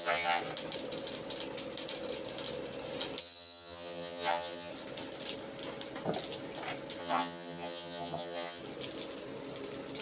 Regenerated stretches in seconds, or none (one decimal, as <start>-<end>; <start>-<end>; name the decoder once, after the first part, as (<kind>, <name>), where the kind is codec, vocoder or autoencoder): 0.0-0.4 (vocoder, HiFi-GAN); 3.2-4.7; 7.0-8.6